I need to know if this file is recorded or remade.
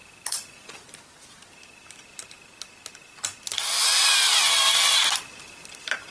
recorded